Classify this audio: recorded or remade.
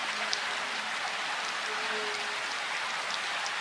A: recorded